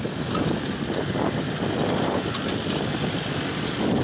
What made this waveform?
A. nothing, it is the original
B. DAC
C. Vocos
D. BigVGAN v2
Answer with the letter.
A